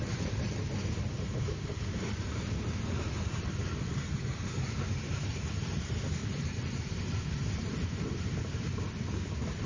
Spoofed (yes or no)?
yes